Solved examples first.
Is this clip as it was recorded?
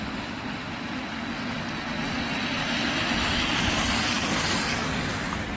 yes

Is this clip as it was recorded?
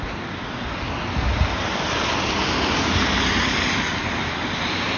yes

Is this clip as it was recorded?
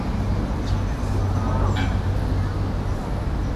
yes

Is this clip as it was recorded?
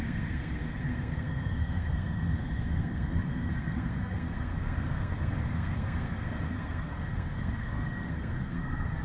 no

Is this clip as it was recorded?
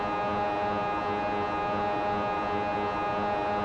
yes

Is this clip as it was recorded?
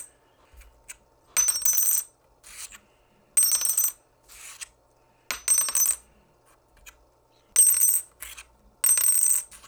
yes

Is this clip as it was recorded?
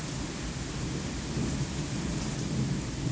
yes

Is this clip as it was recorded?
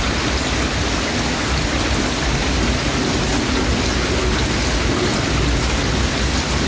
yes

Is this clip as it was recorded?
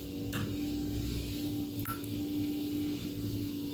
yes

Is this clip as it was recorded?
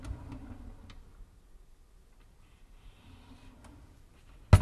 yes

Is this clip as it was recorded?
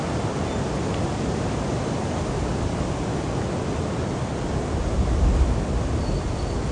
yes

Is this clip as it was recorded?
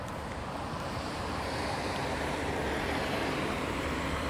no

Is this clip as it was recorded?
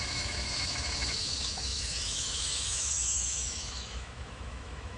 no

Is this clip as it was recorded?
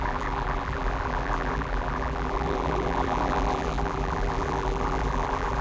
no